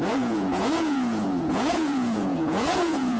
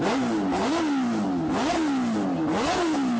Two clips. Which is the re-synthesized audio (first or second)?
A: first